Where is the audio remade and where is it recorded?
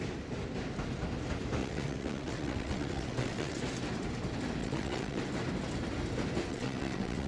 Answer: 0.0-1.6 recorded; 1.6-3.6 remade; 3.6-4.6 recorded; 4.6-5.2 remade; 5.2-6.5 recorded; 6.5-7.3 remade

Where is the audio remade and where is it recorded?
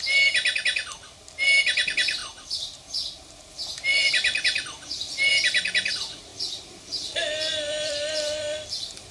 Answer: 0.0-2.2 recorded; 2.2-3.4 remade; 3.4-3.9 recorded; 3.9-5.3 remade; 5.3-6.3 recorded; 6.3-9.1 remade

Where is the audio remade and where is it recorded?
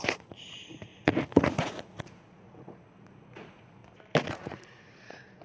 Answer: 0.0-3.8 remade; 3.8-4.3 recorded; 4.3-5.4 remade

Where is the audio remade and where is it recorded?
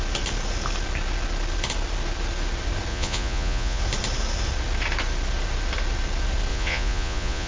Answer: 0.0-2.9 recorded; 2.9-3.8 remade; 3.8-6.5 recorded; 6.5-7.5 remade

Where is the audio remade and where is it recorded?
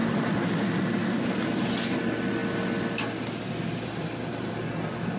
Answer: 0.0-5.2 recorded